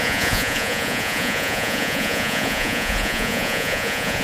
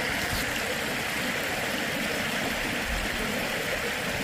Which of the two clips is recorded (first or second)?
second